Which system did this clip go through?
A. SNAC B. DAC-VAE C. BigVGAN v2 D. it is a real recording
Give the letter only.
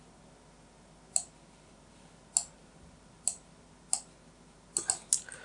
D